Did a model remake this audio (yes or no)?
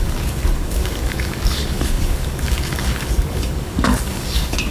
yes